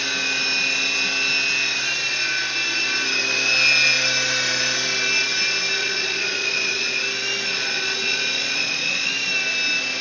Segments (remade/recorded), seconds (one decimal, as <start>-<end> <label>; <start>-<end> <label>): 0.0-5.8 recorded; 5.8-7.0 remade; 7.0-7.5 recorded; 7.5-9.1 remade; 9.1-10.0 recorded